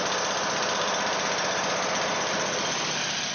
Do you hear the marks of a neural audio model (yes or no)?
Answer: no